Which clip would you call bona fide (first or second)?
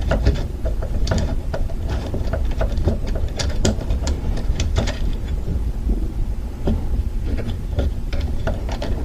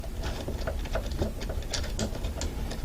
second